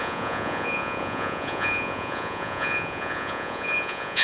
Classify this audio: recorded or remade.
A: remade